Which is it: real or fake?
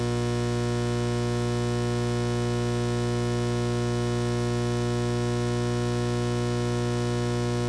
real